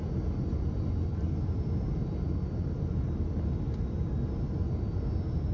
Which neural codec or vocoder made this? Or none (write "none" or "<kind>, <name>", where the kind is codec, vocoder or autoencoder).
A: none